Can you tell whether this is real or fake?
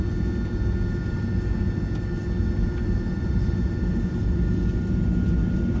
real